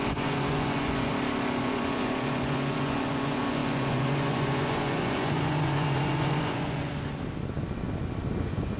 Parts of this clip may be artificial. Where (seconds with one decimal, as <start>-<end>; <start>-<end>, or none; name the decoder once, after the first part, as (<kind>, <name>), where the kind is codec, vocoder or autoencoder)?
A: 0.0-1.1 (vocoder, Vocos); 1.6-6.9; 8.4-8.8